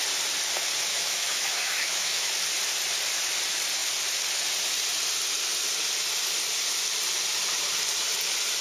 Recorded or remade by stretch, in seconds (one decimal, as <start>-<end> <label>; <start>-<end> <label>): 0.0-0.9 recorded; 0.9-2.3 remade; 2.3-8.6 recorded